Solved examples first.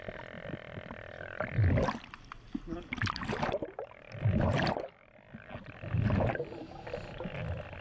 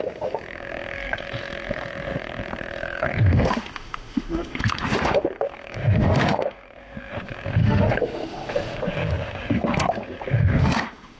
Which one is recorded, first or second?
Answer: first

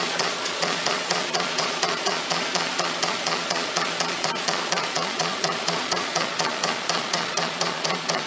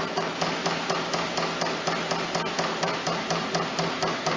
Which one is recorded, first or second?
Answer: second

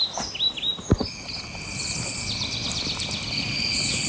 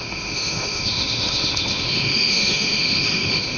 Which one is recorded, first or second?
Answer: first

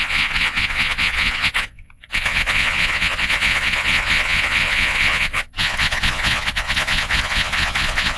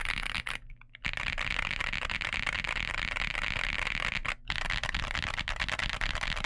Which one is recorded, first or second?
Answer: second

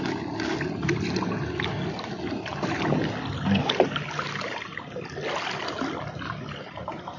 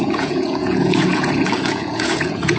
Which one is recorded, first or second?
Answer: first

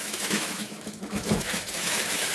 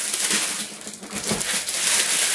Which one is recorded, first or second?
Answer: second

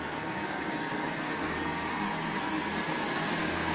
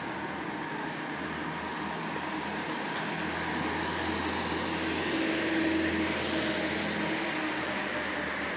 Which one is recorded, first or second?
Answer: second